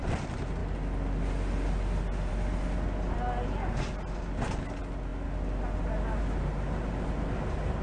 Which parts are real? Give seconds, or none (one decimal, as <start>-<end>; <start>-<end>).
0.0-7.8